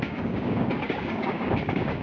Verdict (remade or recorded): remade